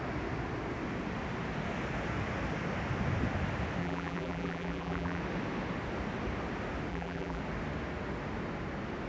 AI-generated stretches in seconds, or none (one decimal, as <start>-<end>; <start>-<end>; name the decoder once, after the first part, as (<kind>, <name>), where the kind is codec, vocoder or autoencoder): 3.8-5.2 (vocoder, BigVGAN v2); 6.9-7.4